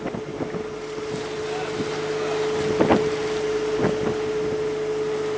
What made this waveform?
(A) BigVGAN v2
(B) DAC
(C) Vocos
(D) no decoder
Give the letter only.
D